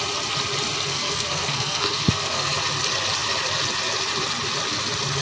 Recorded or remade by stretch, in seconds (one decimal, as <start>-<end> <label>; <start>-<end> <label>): 0.0-0.9 recorded; 0.9-2.5 remade; 2.5-5.2 recorded